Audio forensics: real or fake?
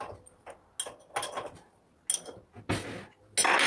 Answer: real